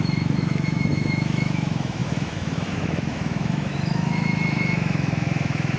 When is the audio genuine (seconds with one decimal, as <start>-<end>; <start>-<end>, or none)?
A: none